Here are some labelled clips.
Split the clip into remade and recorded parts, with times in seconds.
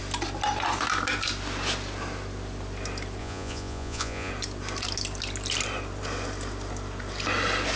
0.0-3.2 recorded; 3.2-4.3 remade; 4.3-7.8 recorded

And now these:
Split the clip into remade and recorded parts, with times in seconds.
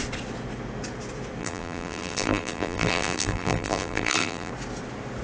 0.0-1.4 recorded; 1.4-4.5 remade; 4.5-5.2 recorded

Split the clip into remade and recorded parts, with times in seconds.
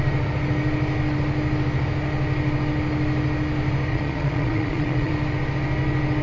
0.0-3.9 recorded; 3.9-5.1 remade; 5.1-6.2 recorded